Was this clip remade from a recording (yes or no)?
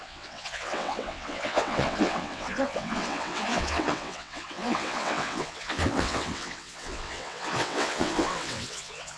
yes